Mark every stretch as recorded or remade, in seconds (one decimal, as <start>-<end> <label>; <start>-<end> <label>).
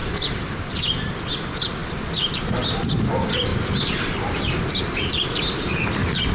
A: 0.0-1.1 remade; 1.1-1.8 recorded; 1.8-2.6 remade; 2.6-3.5 recorded; 3.5-4.4 remade; 4.4-6.3 recorded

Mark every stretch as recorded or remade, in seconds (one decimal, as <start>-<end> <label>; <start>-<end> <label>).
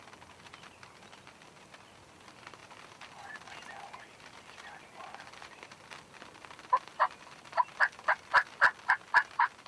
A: 0.0-2.6 recorded; 2.6-7.8 remade; 7.8-9.7 recorded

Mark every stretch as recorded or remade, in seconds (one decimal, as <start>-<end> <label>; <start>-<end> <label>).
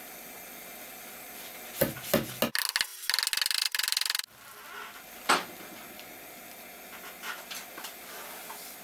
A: 0.0-8.8 recorded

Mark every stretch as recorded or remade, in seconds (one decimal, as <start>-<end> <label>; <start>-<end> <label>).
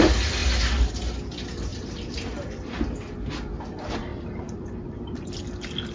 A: 0.0-1.7 recorded; 1.7-2.7 remade; 2.7-4.1 recorded; 4.1-5.3 remade; 5.3-5.9 recorded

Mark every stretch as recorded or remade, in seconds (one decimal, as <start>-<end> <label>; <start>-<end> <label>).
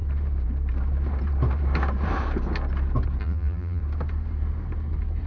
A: 0.0-3.2 recorded; 3.2-3.8 remade; 3.8-5.3 recorded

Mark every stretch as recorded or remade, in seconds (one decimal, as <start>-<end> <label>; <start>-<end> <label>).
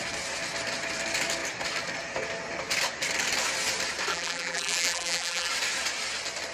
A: 0.0-4.1 recorded; 4.1-5.5 remade; 5.5-6.5 recorded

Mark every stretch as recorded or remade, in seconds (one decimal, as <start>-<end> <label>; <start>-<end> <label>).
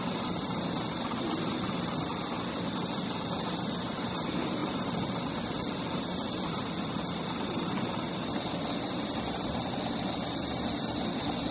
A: 0.0-11.5 remade